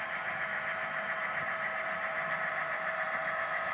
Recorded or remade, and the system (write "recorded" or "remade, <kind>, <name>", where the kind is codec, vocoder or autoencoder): remade, vocoder, BigVGAN v2